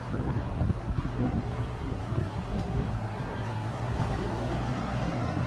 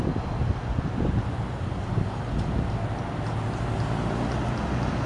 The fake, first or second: first